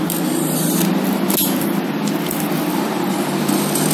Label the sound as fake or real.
real